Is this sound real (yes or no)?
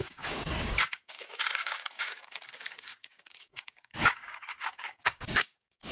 no